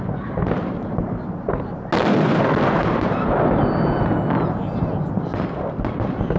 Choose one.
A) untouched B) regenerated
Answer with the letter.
A